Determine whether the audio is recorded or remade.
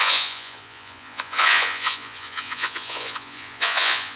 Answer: remade